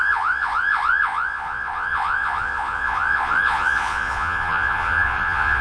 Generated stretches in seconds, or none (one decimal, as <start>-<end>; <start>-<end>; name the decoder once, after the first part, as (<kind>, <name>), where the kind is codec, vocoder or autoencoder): 0.0-5.6 (vocoder, Vocos)